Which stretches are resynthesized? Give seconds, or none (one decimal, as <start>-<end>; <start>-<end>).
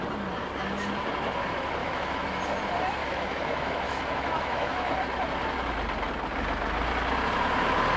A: 1.8-2.4; 3.0-4.9